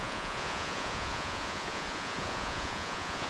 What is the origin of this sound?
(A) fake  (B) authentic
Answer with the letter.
A